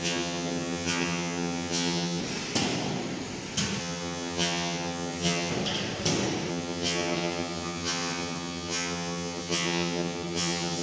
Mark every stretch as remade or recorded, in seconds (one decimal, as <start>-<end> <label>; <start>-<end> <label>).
0.0-2.2 remade; 2.2-3.8 recorded; 3.8-5.5 remade; 5.5-6.5 recorded; 6.5-10.8 remade